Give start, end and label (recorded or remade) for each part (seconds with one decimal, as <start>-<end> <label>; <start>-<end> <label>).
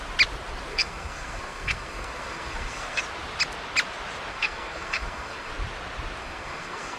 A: 0.0-0.7 recorded; 0.7-3.0 remade; 3.0-4.3 recorded; 4.3-5.5 remade; 5.5-6.2 recorded; 6.2-7.0 remade